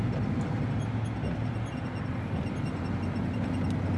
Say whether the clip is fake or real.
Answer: real